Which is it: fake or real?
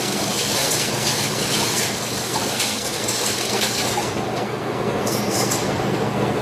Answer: fake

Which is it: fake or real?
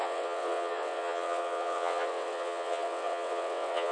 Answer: fake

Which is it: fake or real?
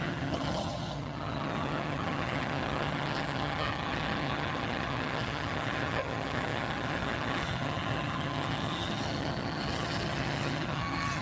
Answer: fake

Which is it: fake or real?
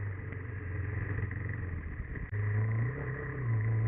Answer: real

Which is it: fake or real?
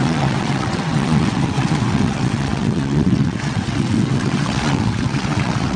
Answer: fake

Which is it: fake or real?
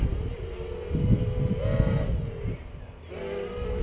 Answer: real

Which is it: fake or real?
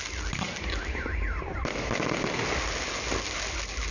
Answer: real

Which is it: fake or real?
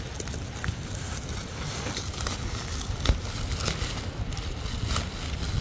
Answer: real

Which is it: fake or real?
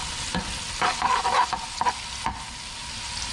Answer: real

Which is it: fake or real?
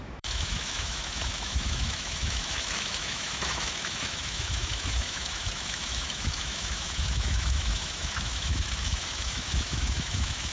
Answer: fake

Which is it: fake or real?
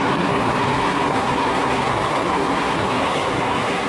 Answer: fake